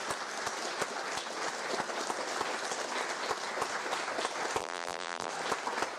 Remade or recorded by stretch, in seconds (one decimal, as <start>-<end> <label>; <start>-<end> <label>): 0.0-4.6 recorded; 4.6-5.3 remade; 5.3-6.0 recorded